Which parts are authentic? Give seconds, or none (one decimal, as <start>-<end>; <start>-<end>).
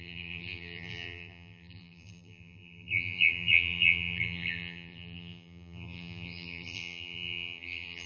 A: none